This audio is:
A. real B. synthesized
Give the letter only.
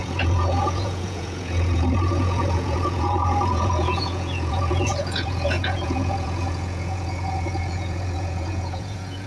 B